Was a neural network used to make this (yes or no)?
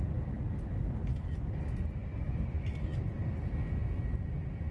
no